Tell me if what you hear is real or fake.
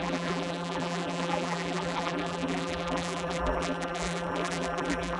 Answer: fake